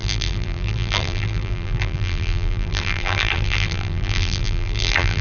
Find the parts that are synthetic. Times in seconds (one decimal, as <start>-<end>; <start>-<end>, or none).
0.0-5.2